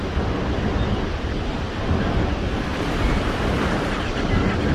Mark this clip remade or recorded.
recorded